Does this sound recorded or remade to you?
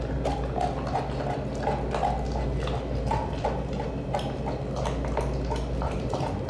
recorded